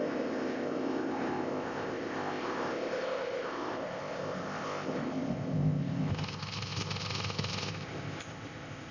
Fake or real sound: fake